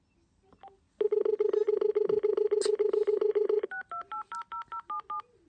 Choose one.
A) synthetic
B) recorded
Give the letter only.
B